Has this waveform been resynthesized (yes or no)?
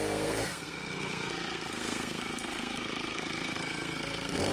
yes